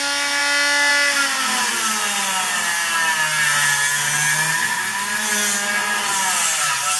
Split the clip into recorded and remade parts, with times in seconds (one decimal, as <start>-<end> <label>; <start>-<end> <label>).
0.0-7.0 recorded